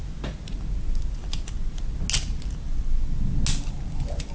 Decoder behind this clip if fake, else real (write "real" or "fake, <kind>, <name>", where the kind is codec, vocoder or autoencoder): real